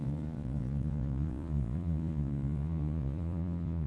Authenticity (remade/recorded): remade